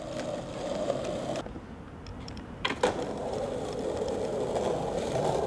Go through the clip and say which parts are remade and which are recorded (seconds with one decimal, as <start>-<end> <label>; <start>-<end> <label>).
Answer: 0.0-2.1 recorded; 2.1-2.7 remade; 2.7-5.5 recorded